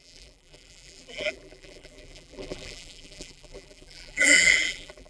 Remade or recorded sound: remade